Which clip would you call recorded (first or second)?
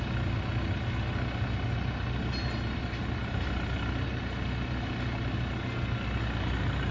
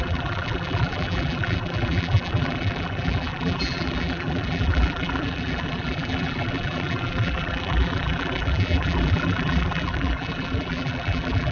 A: first